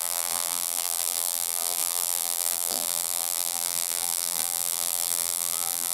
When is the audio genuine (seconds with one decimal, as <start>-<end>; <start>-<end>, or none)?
none